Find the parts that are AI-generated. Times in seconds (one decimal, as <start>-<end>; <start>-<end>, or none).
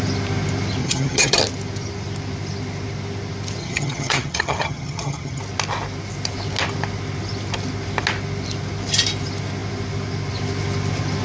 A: 0.8-1.4; 3.6-5.4